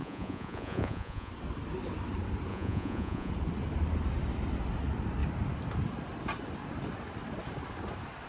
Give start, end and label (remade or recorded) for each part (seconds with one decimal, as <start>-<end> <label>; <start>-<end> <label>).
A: 0.0-1.3 remade; 1.3-2.5 recorded; 2.5-3.3 remade; 3.3-8.3 recorded